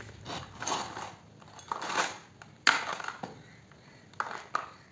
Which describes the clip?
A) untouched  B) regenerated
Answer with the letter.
A